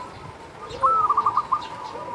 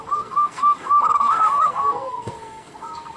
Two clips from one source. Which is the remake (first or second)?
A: second